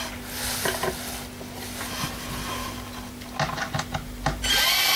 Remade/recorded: recorded